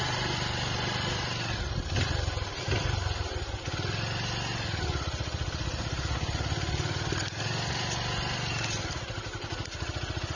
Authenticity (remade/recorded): recorded